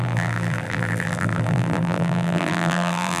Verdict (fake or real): fake